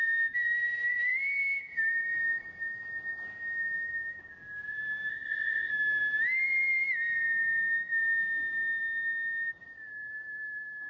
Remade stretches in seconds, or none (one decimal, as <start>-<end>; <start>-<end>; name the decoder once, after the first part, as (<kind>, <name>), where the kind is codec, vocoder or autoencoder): 5.1-5.7 (codec, ZipCodec)